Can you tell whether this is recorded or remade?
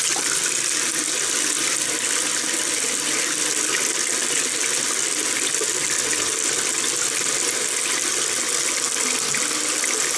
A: recorded